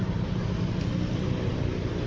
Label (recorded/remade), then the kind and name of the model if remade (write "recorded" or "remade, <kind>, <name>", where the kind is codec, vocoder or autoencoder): recorded